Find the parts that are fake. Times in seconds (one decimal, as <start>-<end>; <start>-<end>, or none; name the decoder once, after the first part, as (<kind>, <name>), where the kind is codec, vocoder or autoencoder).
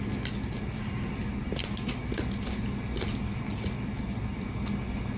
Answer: none